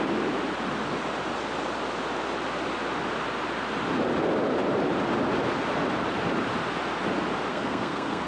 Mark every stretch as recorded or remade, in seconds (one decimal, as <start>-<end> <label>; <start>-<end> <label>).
0.0-7.5 recorded; 7.5-8.3 remade